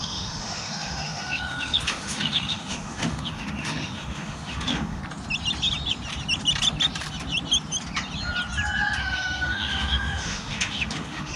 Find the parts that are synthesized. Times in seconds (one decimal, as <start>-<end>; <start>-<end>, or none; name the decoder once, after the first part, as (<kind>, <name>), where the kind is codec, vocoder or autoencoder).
0.0-5.0 (autoencoder, DAC-VAE); 9.0-11.4